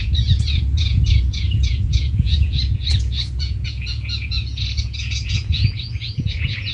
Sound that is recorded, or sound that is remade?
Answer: remade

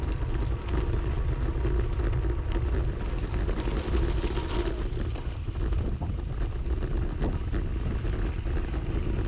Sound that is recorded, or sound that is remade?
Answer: recorded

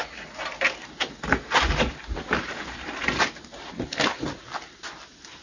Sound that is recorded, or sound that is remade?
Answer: recorded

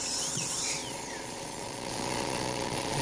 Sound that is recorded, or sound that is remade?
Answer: remade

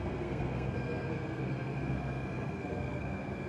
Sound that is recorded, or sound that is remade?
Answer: remade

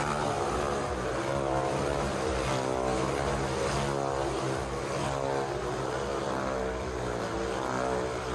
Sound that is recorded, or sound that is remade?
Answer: recorded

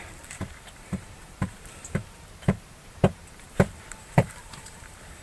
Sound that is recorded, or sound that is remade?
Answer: remade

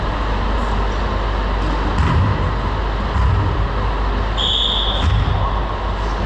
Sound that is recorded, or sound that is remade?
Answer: recorded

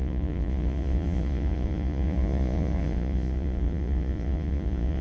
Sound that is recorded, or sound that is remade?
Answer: remade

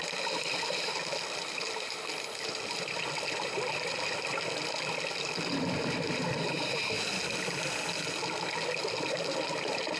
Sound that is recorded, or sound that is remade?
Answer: recorded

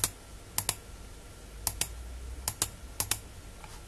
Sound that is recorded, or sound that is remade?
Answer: recorded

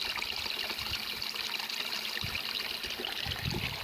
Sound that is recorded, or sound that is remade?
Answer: recorded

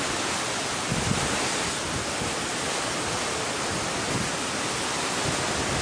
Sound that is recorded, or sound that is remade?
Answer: recorded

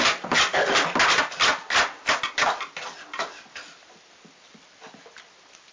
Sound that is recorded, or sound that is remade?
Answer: recorded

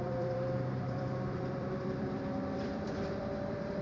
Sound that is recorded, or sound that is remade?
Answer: remade